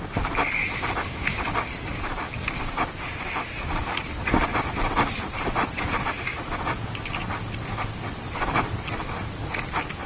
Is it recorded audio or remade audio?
recorded